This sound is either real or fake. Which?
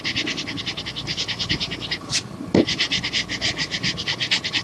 real